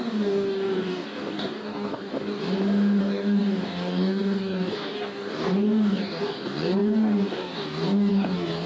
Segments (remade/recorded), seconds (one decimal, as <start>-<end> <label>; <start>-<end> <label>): 0.0-2.4 remade; 2.4-3.0 recorded; 3.0-8.7 remade